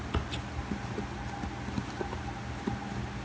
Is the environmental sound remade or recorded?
recorded